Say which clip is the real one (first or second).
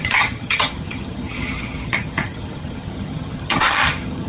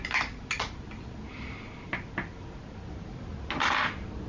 second